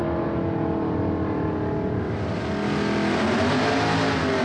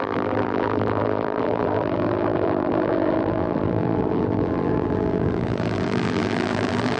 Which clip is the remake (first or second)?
second